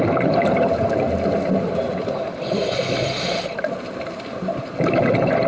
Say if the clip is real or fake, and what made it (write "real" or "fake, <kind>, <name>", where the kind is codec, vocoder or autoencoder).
real